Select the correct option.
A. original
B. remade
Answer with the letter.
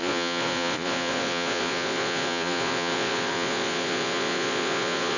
B